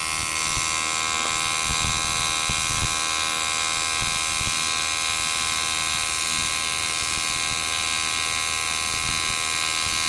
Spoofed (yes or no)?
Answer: no